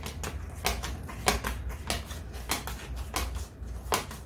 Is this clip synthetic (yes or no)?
no